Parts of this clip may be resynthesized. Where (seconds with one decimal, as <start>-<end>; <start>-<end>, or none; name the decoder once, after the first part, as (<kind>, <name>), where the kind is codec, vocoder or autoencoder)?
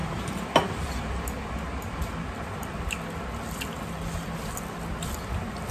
0.0-1.5 (vocoder, BigVGAN v2)